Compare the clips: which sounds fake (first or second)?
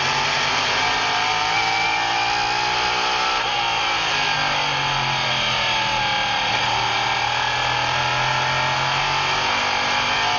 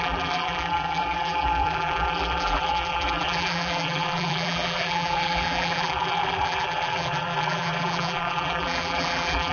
second